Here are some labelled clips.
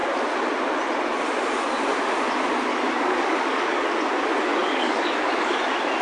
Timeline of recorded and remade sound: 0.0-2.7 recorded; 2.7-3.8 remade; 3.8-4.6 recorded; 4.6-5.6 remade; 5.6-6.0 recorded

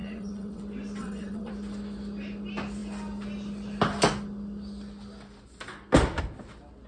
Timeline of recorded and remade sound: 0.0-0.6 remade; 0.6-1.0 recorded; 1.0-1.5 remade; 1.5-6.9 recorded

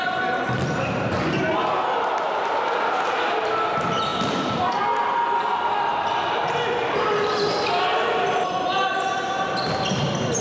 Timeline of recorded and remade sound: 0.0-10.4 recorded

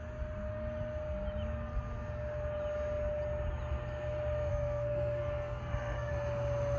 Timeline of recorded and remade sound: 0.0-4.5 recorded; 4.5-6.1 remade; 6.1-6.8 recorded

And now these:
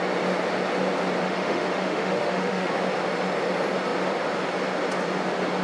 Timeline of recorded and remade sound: 0.0-1.2 recorded; 1.2-2.7 remade; 2.7-5.6 recorded